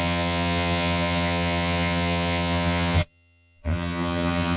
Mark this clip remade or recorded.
remade